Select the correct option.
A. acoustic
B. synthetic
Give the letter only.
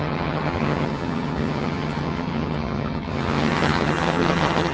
B